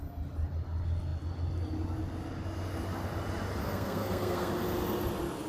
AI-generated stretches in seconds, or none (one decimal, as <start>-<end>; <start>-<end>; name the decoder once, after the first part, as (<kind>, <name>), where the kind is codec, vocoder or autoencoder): 3.6-4.5 (codec, SNAC)